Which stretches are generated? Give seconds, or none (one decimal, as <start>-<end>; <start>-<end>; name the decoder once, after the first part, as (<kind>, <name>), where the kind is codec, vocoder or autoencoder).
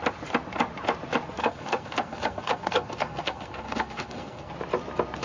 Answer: 1.4-4.5 (codec, SNAC)